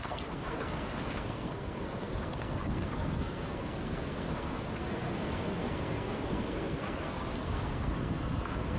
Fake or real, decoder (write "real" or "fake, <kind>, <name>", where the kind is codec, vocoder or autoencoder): fake, codec, SNAC